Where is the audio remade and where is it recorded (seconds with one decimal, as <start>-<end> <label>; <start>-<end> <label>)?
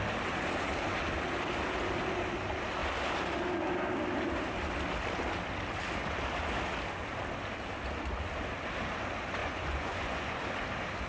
0.0-9.4 recorded; 9.4-10.4 remade; 10.4-11.1 recorded